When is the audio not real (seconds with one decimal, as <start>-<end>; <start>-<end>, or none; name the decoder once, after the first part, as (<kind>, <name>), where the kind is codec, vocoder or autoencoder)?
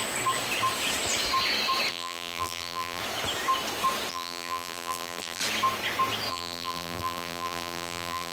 1.9-3.0 (vocoder, BigVGAN v2); 4.1-5.4; 6.3-8.3